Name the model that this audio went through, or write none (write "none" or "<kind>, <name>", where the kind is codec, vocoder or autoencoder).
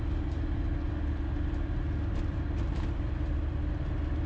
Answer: none